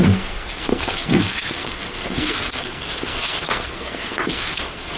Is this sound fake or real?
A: fake